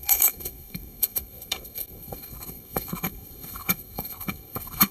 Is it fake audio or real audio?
fake